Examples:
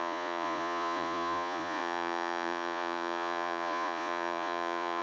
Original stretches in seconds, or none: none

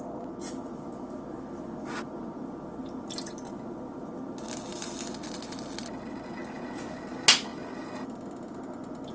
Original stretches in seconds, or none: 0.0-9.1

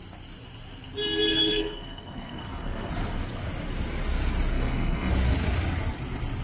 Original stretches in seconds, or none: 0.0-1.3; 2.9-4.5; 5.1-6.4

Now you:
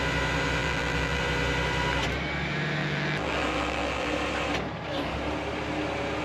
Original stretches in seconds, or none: 0.0-0.6; 1.2-2.8; 4.1-6.2

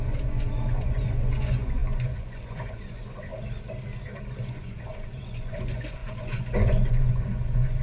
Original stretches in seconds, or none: 3.3-4.4

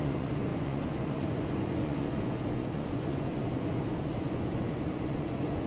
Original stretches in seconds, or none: none

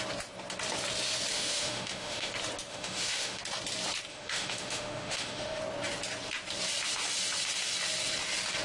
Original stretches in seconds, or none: 0.0-1.3; 2.3-2.7; 3.4-4.1; 5.6-8.6